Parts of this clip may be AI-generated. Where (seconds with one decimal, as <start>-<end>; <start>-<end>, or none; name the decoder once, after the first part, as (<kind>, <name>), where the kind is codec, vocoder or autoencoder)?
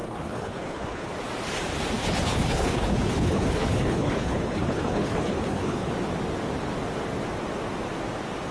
0.0-1.1 (codec, HILCodec); 2.0-5.9